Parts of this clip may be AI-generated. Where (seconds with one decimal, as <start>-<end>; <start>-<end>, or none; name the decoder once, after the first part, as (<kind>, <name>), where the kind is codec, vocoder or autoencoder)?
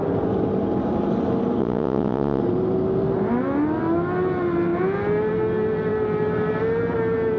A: 1.6-2.4 (vocoder, WaveNeXt)